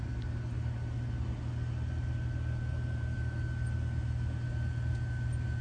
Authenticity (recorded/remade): recorded